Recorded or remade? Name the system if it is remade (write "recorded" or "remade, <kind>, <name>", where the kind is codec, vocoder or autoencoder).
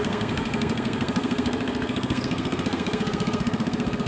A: remade, codec, SNAC